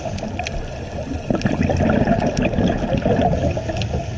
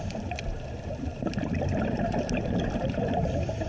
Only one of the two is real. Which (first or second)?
first